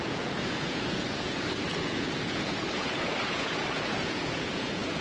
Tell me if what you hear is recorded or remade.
remade